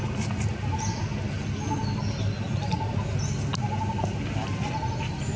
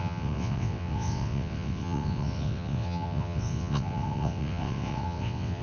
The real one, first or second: first